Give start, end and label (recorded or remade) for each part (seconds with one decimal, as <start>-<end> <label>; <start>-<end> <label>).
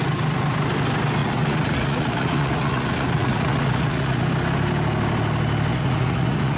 0.0-1.2 recorded; 1.2-4.2 remade; 4.2-5.7 recorded; 5.7-6.6 remade